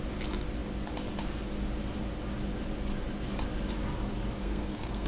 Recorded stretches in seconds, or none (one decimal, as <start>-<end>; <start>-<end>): 0.0-4.4